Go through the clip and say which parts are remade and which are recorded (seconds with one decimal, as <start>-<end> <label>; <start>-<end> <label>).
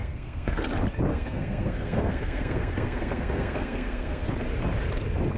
0.0-0.6 remade; 0.6-1.1 recorded; 1.1-4.3 remade; 4.3-5.4 recorded